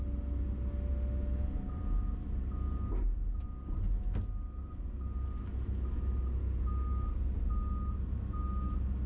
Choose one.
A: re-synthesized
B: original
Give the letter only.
B